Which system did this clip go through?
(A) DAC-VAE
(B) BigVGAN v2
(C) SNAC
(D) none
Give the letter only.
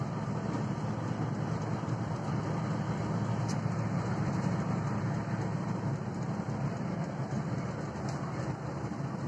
D